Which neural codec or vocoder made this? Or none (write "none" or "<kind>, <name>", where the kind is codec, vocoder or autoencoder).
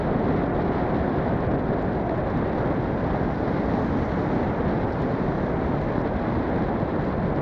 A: none